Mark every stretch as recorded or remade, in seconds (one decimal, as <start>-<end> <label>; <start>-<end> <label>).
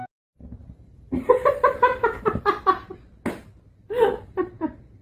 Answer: 0.0-0.6 recorded; 0.6-1.3 remade; 1.3-2.0 recorded; 2.0-2.9 remade; 2.9-5.0 recorded